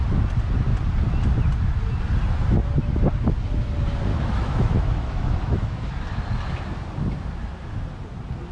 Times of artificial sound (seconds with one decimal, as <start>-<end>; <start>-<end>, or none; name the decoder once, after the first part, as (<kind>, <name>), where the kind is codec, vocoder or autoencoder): 4.1-5.9 (autoencoder, DAC-VAE)